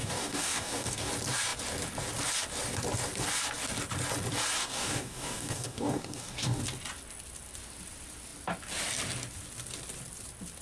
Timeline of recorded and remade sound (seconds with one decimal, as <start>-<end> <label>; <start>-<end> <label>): 0.0-1.1 remade; 1.1-4.6 recorded; 4.6-6.6 remade; 6.6-10.6 recorded